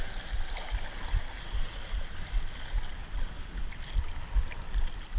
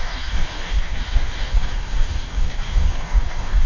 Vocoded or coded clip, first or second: second